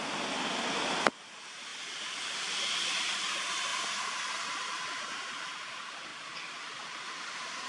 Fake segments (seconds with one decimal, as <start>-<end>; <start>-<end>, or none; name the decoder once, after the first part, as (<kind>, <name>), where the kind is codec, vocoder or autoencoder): 6.1-7.7 (vocoder, BigVGAN v2)